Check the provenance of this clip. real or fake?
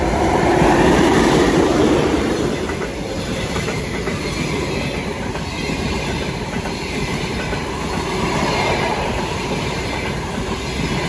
fake